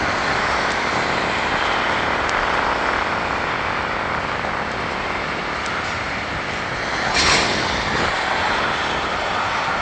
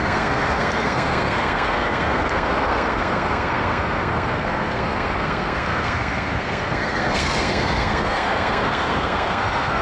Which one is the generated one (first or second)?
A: second